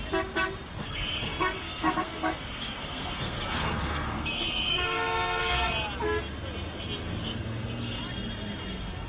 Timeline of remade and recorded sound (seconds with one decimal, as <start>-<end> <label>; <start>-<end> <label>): 0.0-0.8 recorded; 0.8-5.4 remade; 5.4-7.2 recorded; 7.2-8.0 remade; 8.0-9.1 recorded